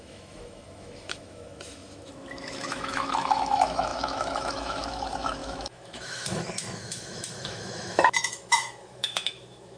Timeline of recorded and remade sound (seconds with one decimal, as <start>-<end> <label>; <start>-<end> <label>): 0.0-9.8 remade